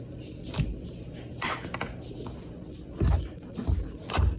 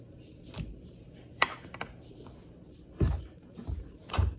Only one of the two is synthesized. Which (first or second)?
second